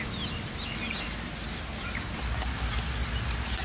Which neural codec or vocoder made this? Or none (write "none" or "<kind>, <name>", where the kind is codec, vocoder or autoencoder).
none